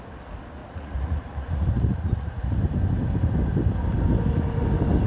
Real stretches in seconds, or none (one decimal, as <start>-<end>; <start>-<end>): 0.0-0.6; 2.6-5.1